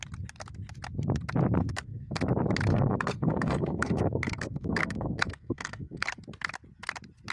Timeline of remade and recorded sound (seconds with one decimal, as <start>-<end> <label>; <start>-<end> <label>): 0.0-1.6 recorded; 1.6-2.2 remade; 2.2-2.7 recorded; 2.7-6.1 remade; 6.1-7.3 recorded